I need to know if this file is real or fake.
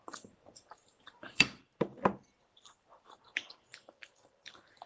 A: fake